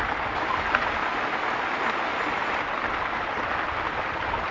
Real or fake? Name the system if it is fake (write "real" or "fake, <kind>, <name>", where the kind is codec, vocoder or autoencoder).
real